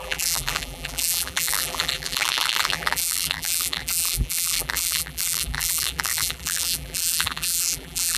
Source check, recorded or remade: remade